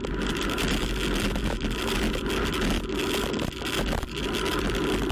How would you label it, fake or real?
real